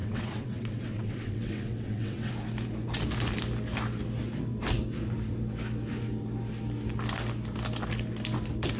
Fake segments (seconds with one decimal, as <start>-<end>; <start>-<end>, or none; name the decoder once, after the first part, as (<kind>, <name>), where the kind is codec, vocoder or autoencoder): 0.0-2.3 (vocoder, WaveNeXt)